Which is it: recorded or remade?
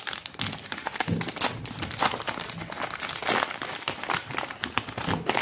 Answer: recorded